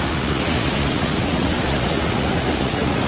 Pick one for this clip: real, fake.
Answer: fake